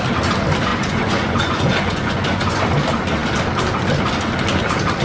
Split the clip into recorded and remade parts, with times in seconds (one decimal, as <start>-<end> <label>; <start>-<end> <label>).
0.0-0.7 recorded; 0.7-2.6 remade; 2.6-5.0 recorded